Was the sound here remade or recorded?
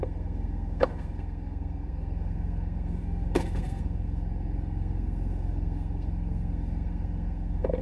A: remade